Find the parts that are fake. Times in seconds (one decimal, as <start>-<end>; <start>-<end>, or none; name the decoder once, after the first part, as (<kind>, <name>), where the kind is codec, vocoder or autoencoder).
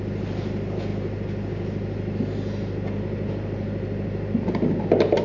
none